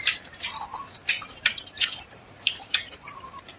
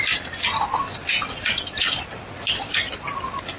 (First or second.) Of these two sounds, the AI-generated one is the first